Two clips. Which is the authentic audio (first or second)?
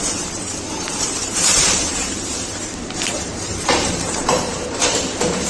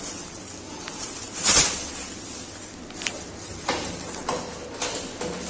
second